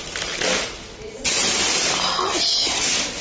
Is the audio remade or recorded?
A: recorded